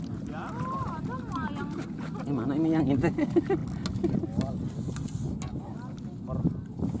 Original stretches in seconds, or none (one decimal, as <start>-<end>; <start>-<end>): 0.0-7.0